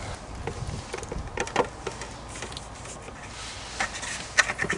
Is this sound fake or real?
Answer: real